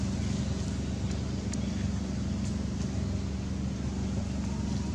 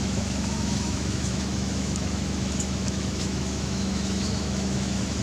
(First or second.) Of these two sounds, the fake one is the second